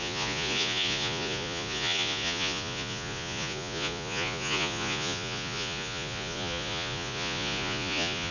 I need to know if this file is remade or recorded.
remade